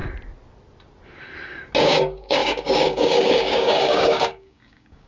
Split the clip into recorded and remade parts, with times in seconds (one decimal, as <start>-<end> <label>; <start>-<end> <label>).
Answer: 0.0-1.8 recorded; 1.8-5.1 remade